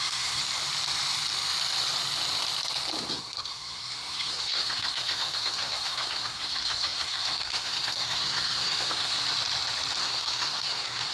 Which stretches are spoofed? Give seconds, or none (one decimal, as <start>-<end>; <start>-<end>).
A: 0.0-0.4; 3.1-9.2; 10.0-11.1